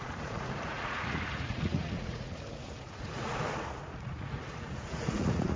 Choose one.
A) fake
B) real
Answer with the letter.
A